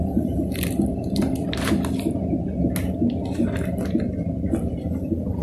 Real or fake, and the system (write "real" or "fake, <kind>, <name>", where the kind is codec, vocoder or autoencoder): real